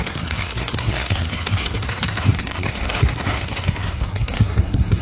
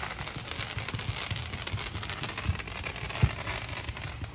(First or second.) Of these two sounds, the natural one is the second